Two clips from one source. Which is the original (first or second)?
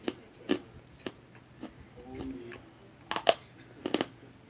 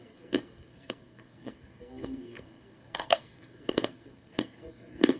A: first